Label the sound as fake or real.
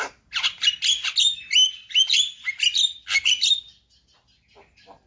real